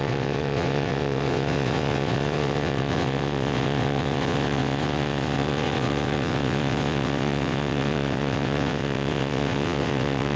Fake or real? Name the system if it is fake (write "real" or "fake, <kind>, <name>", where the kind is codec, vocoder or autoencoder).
fake, vocoder, WaveNeXt